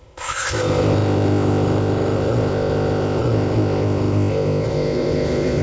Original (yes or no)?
no